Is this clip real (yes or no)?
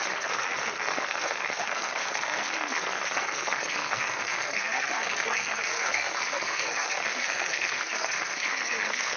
no